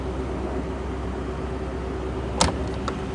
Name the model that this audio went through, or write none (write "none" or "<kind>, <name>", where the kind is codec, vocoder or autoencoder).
none